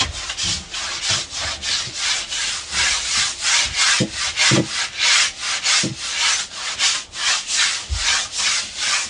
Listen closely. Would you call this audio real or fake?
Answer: real